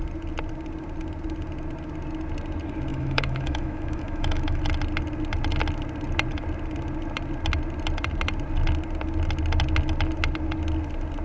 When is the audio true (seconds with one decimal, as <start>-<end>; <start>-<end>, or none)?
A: 0.0-2.9; 4.6-11.2